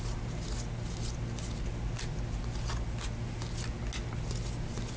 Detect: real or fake real